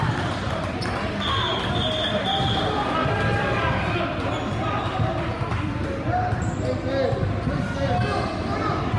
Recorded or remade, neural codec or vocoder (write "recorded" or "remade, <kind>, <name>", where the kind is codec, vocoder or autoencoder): recorded